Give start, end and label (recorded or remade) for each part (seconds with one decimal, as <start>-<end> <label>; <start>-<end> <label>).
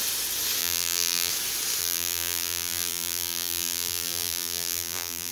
0.0-0.6 recorded; 0.6-1.3 remade; 1.3-1.8 recorded; 1.8-5.3 remade